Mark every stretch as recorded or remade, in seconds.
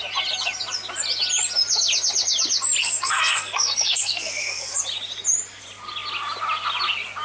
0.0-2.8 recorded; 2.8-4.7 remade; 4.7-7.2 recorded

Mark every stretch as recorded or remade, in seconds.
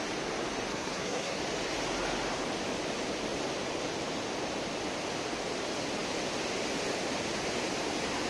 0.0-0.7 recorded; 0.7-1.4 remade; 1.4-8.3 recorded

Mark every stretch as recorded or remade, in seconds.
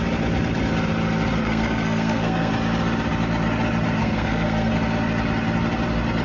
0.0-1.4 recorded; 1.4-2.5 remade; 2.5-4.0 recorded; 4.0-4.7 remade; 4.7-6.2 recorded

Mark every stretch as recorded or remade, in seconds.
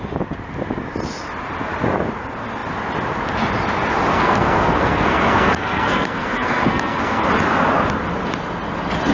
0.0-4.1 recorded; 4.1-7.3 remade; 7.3-9.1 recorded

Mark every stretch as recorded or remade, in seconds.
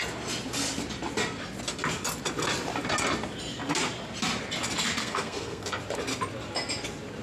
0.0-5.0 recorded; 5.0-5.8 remade; 5.8-7.2 recorded